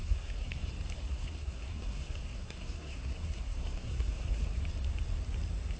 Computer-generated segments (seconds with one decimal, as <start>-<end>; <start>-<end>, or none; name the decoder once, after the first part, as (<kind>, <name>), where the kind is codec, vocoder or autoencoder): 0.0-0.7 (codec, SNAC); 1.1-4.6